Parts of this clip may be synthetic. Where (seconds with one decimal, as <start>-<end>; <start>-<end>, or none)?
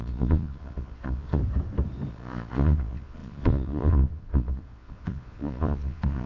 0.0-1.4; 2.1-6.3